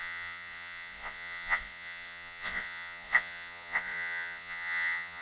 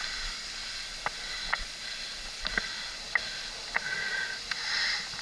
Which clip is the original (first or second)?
second